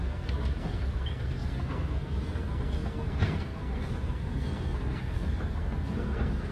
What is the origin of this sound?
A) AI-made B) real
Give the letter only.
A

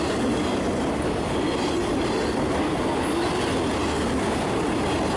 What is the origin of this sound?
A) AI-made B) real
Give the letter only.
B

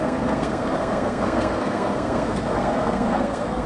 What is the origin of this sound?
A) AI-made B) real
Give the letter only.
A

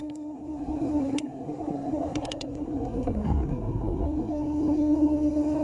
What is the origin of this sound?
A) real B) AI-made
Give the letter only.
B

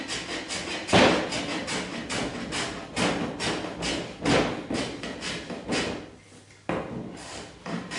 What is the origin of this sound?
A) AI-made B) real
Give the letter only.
B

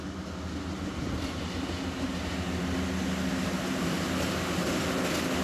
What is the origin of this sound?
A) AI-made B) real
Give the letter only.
B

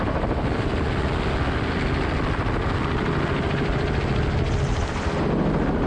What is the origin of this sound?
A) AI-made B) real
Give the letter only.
B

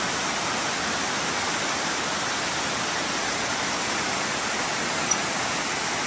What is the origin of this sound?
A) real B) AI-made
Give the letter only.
A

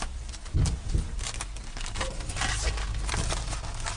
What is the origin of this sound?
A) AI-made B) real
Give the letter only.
B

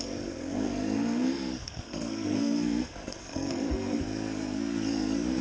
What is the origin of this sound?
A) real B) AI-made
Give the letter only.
B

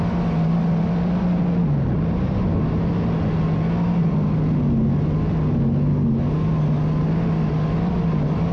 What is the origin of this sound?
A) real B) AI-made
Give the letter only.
A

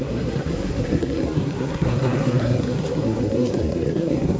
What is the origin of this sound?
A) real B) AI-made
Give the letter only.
B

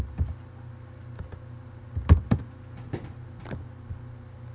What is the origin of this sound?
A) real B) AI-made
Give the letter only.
A